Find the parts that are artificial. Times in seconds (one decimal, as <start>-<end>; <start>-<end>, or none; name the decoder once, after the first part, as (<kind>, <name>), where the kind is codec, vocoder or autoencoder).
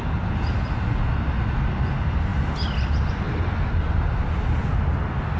none